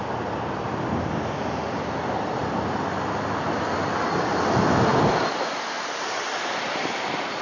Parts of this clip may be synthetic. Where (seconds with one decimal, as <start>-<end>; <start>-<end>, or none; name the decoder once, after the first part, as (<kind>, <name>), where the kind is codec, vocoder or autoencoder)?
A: none